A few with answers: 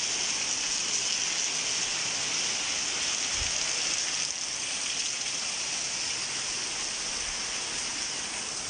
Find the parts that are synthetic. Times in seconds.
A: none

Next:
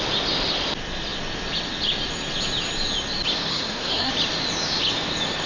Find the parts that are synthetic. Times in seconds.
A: 3.5-4.1 (codec, SNAC)

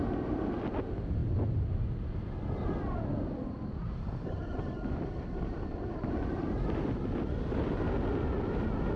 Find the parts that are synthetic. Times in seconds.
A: none

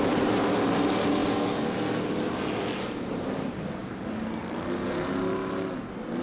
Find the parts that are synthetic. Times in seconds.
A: none